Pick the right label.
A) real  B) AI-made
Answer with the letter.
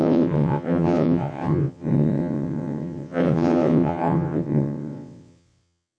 B